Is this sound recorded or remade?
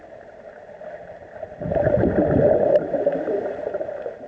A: recorded